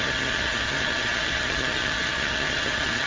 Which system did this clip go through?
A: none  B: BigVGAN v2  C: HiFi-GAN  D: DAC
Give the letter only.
C